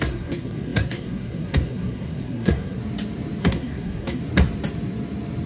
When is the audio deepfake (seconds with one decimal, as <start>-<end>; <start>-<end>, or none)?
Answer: 0.0-2.8; 3.4-4.2